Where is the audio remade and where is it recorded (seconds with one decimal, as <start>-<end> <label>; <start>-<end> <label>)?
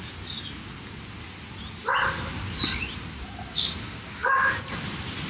0.0-1.8 recorded; 1.8-2.4 remade; 2.4-4.2 recorded; 4.2-5.3 remade